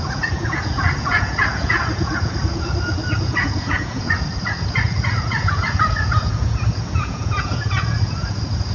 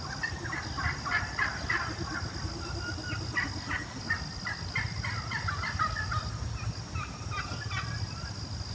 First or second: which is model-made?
first